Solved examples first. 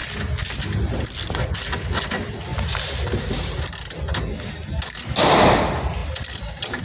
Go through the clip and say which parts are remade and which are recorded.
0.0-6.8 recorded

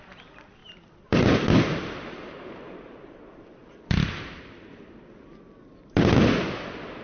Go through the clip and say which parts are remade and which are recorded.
0.0-0.6 recorded; 0.6-2.6 remade; 2.6-3.6 recorded; 3.6-4.4 remade; 4.4-7.0 recorded

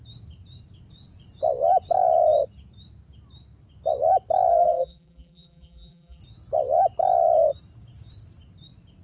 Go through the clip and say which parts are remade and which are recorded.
0.0-4.5 recorded; 4.5-6.2 remade; 6.2-9.0 recorded

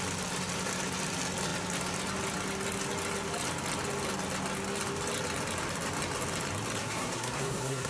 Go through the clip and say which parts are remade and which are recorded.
0.0-6.8 recorded; 6.8-7.9 remade

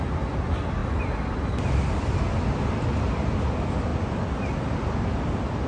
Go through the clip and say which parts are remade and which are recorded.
0.0-5.7 recorded

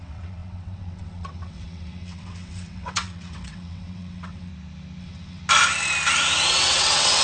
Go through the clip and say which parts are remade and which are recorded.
0.0-4.5 remade; 4.5-5.0 recorded; 5.0-5.4 remade; 5.4-6.5 recorded; 6.5-7.2 remade